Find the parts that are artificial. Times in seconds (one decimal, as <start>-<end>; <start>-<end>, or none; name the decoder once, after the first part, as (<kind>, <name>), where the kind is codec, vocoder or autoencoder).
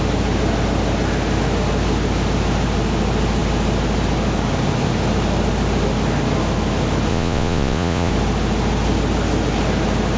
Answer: 7.1-8.1 (vocoder, Vocos)